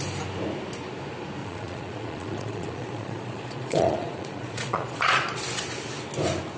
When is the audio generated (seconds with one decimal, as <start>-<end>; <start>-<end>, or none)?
1.4-5.4